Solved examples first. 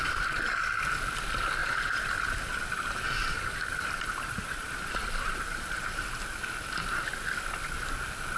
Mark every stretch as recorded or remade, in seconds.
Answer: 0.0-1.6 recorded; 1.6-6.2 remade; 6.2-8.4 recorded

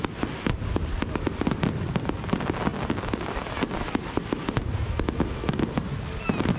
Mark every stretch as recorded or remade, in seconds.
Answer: 0.0-6.6 recorded

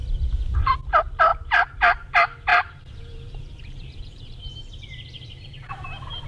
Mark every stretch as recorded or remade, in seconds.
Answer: 0.0-1.3 recorded; 1.3-1.8 remade; 1.8-2.5 recorded; 2.5-6.3 remade

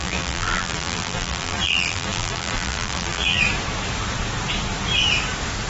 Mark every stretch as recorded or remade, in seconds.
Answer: 0.0-3.4 remade; 3.4-5.7 recorded

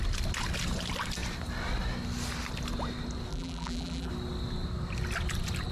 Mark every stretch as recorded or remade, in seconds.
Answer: 0.0-3.3 recorded; 3.3-4.1 remade; 4.1-5.7 recorded

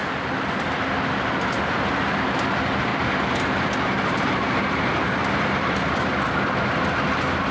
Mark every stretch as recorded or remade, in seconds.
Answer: 0.0-2.9 recorded; 2.9-5.8 remade; 5.8-7.5 recorded